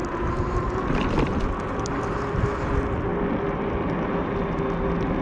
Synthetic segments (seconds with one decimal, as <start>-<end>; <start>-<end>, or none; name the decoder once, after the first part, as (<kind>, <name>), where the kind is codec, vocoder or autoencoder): 0.0-0.7 (vocoder, BigVGAN v2)